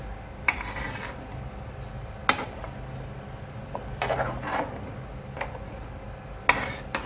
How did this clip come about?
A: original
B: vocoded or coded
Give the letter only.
A